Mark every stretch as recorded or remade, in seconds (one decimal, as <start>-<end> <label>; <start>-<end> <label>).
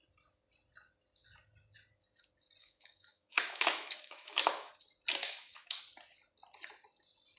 0.0-2.6 recorded; 2.6-4.7 remade; 4.7-5.2 recorded; 5.2-5.8 remade; 5.8-7.4 recorded